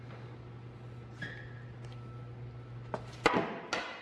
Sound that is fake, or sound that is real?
real